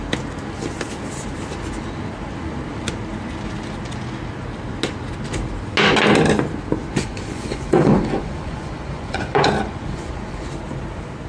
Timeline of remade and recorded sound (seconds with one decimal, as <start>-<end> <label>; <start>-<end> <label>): 0.0-6.9 recorded; 6.9-10.5 remade; 10.5-11.3 recorded